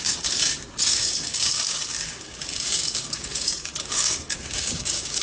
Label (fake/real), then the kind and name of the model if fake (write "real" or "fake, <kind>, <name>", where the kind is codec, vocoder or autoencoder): fake, codec, DAC